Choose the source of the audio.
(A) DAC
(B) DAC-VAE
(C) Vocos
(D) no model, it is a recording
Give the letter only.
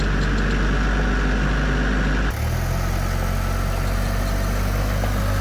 D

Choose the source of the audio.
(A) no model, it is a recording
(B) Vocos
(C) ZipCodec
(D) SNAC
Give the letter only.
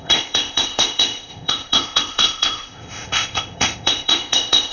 C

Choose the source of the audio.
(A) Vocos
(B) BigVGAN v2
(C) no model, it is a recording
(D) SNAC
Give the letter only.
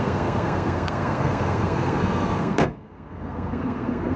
D